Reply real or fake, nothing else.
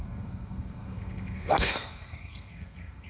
fake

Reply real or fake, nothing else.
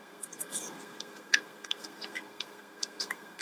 fake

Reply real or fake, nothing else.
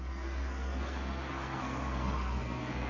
fake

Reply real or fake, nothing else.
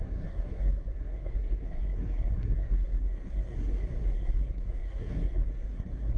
fake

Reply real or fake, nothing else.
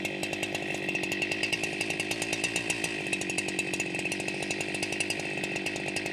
real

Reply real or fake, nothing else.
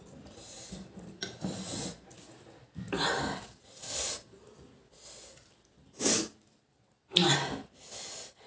real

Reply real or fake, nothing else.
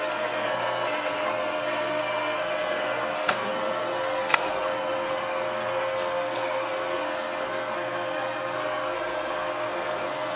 fake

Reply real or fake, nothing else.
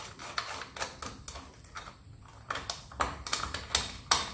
real